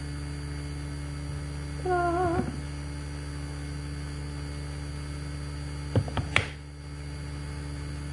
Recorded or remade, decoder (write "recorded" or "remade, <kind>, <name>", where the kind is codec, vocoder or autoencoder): recorded